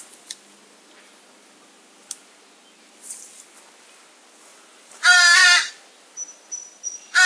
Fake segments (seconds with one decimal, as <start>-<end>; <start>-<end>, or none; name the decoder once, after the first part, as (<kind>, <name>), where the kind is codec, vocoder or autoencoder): 4.5-5.7 (vocoder, BigVGAN v2)